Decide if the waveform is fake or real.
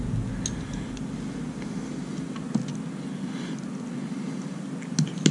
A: real